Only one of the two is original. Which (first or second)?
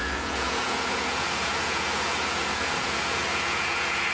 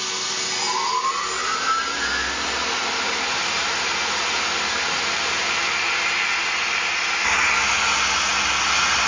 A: second